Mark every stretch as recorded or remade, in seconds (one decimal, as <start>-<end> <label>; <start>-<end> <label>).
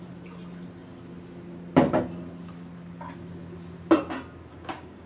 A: 0.0-4.5 recorded; 4.5-5.1 remade